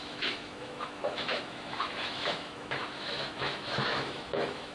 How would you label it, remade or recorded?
remade